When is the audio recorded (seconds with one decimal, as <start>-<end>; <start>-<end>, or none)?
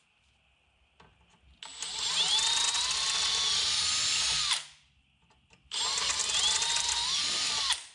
0.0-7.9